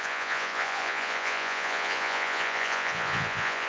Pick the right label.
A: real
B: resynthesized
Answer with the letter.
B